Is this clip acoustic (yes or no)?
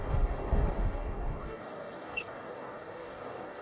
no